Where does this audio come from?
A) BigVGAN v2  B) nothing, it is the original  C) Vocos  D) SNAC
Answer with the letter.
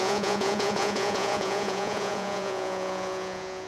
C